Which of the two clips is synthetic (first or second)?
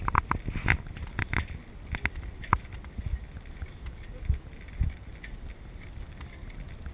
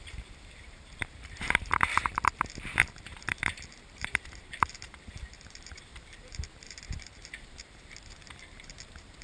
second